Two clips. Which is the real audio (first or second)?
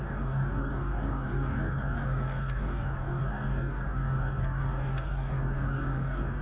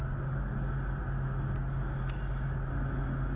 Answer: second